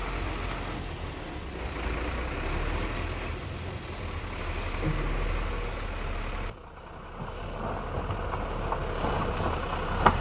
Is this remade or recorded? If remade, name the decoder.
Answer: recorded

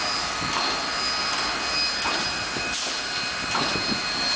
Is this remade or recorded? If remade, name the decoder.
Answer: recorded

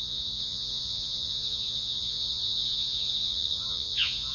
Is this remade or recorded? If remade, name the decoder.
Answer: remade, vocoder, Vocos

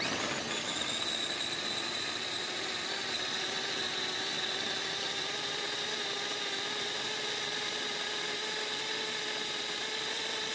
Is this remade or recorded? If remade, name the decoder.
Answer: recorded